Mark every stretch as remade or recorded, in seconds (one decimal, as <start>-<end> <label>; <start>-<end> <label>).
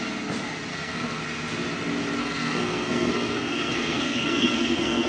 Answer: 0.0-0.7 recorded; 0.7-1.2 remade; 1.2-2.2 recorded; 2.2-5.1 remade